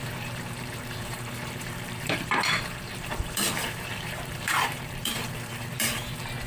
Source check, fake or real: fake